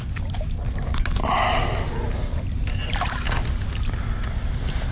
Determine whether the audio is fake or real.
real